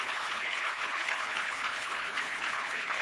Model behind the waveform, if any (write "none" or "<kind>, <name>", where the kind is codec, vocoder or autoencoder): codec, HILCodec